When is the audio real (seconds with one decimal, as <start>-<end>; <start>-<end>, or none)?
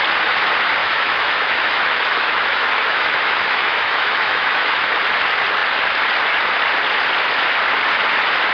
0.0-0.8; 4.9-8.5